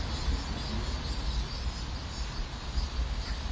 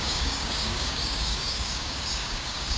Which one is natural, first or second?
first